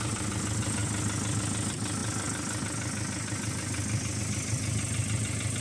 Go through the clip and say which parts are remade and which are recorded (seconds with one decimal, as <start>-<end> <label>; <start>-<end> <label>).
0.0-5.6 recorded